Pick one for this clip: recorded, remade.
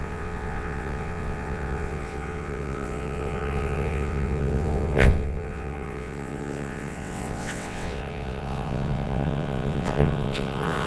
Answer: remade